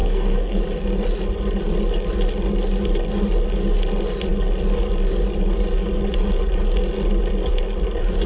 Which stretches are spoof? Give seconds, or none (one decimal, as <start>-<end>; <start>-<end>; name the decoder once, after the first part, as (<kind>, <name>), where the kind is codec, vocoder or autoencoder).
0.0-0.6 (codec, SNAC)